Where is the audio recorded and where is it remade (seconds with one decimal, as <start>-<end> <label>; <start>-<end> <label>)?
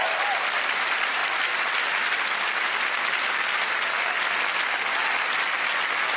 0.0-6.2 recorded